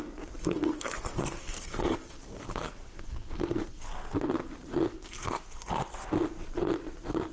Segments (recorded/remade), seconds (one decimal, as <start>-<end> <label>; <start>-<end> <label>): 0.0-0.4 recorded; 0.4-3.9 remade; 3.9-4.9 recorded; 4.9-5.7 remade; 5.7-7.3 recorded